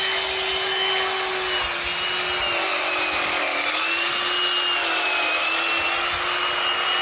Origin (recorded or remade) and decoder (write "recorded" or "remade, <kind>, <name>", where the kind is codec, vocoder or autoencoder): recorded